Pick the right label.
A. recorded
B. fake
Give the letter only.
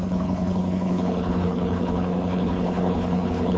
B